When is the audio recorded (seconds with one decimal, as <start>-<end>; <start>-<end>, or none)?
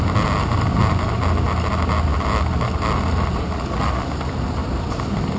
0.0-5.4